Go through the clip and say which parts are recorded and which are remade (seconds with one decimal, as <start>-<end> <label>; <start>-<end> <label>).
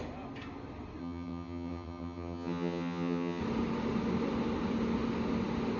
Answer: 0.0-1.0 recorded; 1.0-3.4 remade; 3.4-5.8 recorded